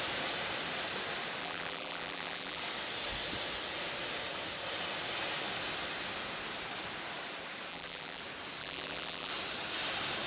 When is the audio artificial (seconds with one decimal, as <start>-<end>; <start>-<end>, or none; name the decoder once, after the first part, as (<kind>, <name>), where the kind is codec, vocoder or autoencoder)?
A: 1.4-2.6 (vocoder, BigVGAN v2); 7.7-8.2; 8.6-9.3